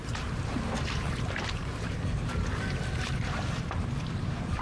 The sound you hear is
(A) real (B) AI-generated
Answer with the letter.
B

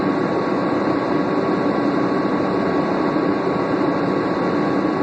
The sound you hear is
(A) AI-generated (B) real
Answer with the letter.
B